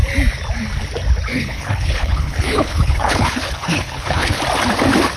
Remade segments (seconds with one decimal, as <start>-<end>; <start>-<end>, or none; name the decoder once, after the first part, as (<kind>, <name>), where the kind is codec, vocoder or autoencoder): 1.3-4.4 (codec, HILCodec)